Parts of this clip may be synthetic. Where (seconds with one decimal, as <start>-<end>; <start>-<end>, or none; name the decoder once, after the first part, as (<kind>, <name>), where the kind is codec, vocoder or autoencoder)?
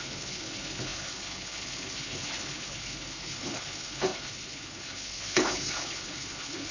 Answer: 0.0-6.7 (codec, HILCodec)